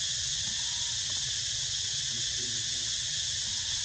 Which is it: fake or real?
fake